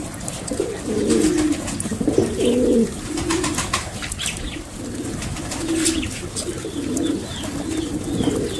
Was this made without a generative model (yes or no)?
yes